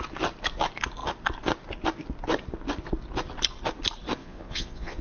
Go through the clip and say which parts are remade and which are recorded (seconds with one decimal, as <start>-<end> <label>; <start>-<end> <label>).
0.0-4.2 recorded; 4.2-5.0 remade